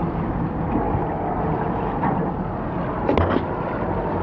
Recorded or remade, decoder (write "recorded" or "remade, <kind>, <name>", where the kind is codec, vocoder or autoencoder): recorded